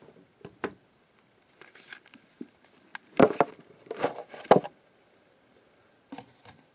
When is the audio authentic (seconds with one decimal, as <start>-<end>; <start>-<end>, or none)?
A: 0.0-6.7